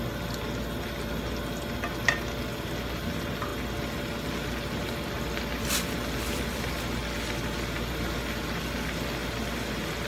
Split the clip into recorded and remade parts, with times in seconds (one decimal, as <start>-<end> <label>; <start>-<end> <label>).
0.0-10.1 recorded